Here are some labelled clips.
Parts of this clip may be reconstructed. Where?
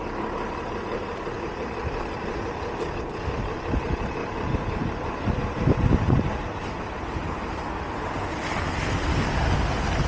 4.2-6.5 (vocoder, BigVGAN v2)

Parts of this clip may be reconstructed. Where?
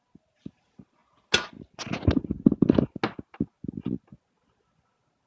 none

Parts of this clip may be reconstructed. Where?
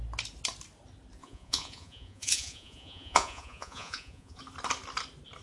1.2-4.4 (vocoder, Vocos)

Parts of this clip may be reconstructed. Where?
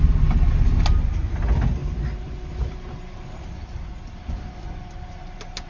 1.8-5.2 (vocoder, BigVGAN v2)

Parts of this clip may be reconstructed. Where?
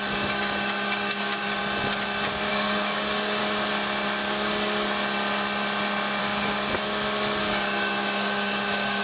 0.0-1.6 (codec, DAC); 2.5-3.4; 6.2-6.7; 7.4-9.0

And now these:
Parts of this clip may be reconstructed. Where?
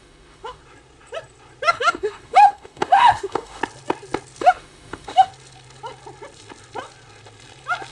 0.0-0.6 (autoencoder, DAC-VAE); 1.7-3.6; 4.4-5.3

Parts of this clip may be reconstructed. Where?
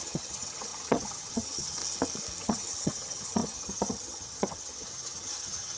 0.0-1.8 (vocoder, HiFi-GAN); 2.4-5.8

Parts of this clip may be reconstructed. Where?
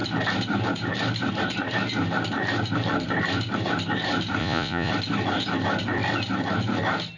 4.4-4.9 (vocoder, Vocos)